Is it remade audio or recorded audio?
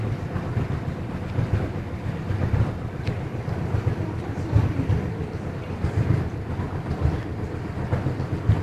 remade